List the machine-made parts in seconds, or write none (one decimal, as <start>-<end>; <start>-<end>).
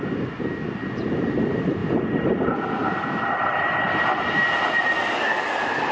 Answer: 2.8-3.7